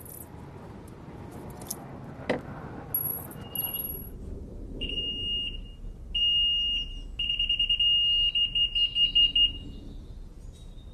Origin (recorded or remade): recorded